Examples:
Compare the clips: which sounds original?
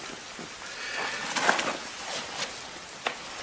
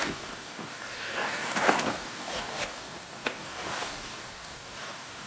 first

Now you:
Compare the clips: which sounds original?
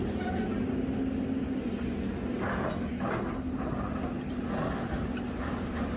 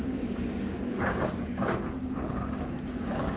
first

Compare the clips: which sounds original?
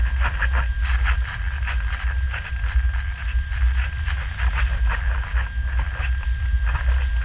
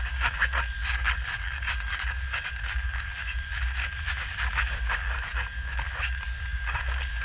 first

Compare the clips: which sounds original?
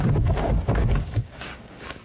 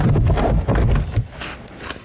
second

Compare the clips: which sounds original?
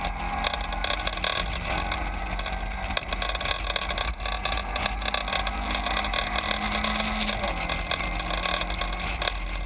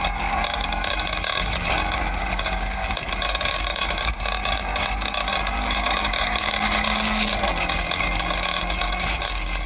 first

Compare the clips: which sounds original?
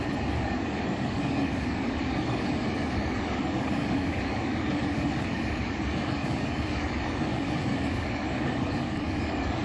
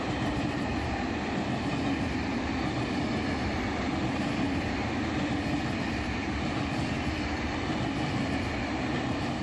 second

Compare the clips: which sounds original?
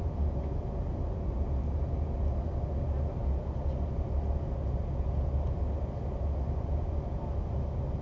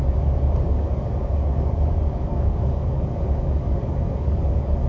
first